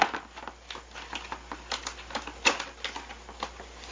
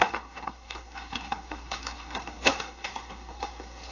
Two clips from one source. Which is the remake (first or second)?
second